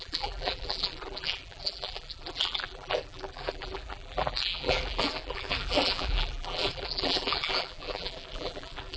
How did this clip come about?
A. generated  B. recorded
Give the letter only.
A